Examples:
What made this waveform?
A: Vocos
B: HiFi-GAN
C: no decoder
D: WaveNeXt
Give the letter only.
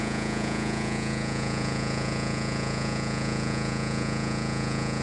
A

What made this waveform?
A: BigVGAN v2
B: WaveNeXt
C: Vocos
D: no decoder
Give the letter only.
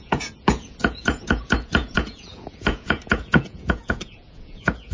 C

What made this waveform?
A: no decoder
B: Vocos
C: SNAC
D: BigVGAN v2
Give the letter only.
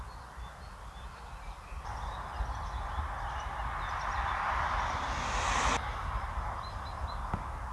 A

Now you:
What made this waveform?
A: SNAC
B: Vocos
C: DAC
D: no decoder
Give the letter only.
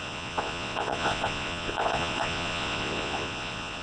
B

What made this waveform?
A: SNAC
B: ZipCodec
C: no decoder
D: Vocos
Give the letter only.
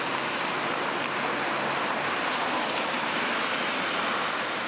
C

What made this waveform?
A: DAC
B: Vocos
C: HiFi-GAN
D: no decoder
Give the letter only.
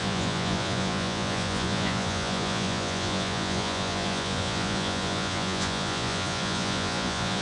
B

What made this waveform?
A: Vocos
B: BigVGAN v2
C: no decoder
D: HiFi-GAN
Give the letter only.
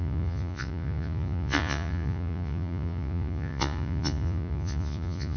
A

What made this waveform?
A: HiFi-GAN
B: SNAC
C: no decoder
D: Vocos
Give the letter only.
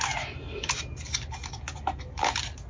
C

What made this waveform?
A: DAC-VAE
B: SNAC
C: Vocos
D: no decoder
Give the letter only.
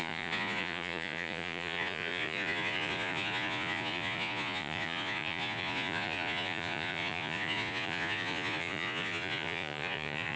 C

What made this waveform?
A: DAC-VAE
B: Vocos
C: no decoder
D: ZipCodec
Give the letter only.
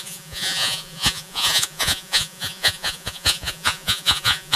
B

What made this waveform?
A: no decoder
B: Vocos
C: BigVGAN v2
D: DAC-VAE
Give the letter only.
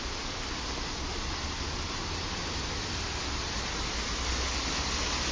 A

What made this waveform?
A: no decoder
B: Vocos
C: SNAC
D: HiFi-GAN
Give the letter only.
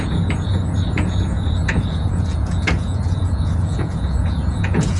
B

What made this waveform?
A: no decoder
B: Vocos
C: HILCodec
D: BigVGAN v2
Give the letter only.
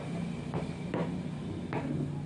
A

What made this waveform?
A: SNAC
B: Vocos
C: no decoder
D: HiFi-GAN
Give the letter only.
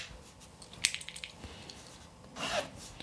C